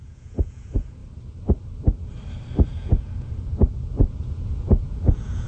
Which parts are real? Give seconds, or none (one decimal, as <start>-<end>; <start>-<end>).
1.0-2.7